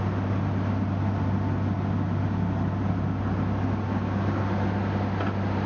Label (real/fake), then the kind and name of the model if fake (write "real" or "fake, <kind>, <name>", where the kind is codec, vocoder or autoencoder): real